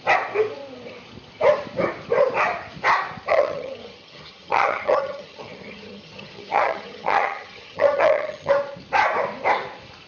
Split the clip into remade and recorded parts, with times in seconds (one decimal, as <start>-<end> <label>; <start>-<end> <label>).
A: 0.0-3.3 recorded; 3.3-8.5 remade; 8.5-10.1 recorded